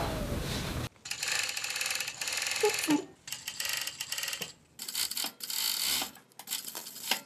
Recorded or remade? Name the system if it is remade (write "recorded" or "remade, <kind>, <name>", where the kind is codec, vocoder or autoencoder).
recorded